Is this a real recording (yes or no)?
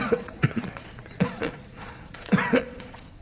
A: no